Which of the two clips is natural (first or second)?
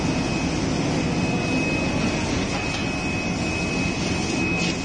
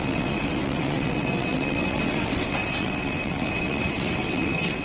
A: first